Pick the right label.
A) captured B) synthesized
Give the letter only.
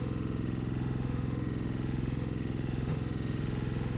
B